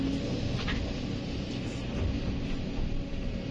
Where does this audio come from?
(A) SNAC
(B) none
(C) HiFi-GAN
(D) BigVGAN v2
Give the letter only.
B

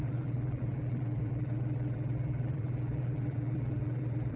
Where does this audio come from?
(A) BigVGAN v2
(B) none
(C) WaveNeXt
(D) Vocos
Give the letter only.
A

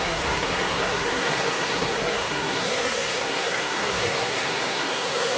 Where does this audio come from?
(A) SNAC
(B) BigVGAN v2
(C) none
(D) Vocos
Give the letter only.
A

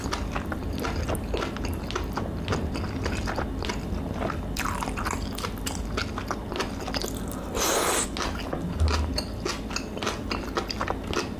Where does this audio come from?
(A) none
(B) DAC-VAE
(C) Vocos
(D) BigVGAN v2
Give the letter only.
A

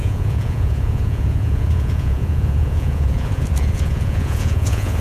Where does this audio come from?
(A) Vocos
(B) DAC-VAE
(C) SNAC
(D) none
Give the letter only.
A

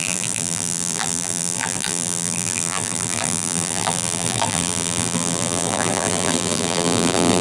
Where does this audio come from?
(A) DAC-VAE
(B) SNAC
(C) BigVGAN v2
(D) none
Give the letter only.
C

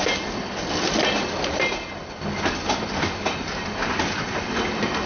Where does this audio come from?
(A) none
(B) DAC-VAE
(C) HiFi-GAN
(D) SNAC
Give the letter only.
A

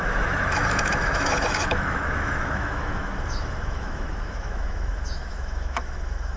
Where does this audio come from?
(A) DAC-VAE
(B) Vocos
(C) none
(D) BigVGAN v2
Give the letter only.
A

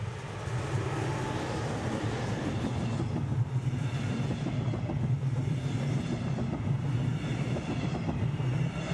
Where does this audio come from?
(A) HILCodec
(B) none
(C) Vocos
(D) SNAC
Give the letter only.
B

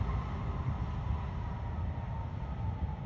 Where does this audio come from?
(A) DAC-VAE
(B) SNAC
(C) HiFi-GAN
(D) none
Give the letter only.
D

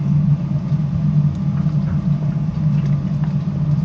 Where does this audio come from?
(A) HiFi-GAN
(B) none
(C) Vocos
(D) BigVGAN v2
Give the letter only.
B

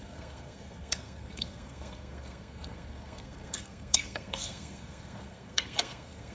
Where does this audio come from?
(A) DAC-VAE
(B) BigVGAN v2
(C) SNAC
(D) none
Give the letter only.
C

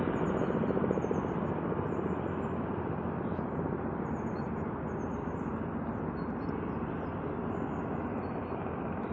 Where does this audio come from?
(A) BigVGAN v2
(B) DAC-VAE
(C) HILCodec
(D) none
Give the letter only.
D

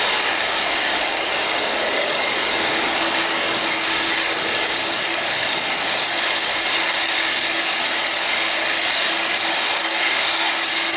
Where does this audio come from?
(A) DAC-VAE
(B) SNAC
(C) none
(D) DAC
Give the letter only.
D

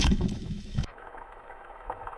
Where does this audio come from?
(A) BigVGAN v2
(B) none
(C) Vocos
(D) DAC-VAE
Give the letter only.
D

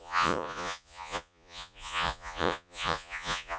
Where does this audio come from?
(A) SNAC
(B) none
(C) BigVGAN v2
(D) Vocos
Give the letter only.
D